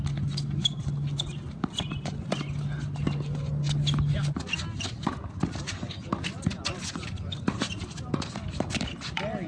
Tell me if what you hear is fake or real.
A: real